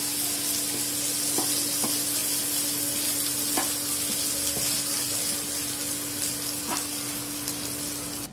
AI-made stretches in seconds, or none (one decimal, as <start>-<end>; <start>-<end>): none